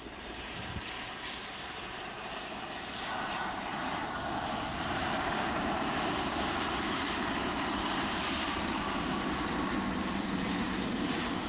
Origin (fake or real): fake